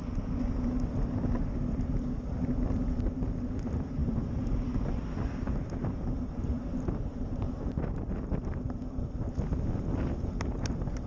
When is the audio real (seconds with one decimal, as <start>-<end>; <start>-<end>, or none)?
0.0-4.0; 4.9-5.8; 8.2-11.1